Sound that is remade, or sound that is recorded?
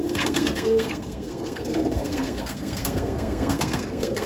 remade